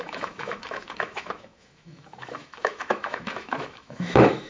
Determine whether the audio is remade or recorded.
remade